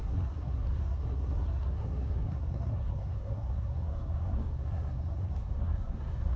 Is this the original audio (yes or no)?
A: no